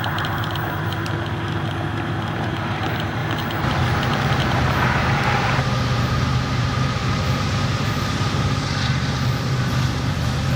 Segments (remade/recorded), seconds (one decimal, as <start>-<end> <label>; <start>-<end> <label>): 0.0-7.0 remade; 7.0-7.9 recorded; 7.9-10.6 remade